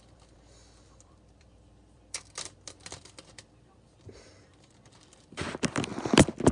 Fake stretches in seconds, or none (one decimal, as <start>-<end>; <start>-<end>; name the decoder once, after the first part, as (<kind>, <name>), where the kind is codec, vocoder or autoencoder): 0.0-5.9 (vocoder, BigVGAN v2)